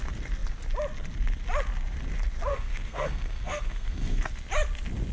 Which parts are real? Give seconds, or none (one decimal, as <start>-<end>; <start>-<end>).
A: 0.0-2.5; 4.2-5.1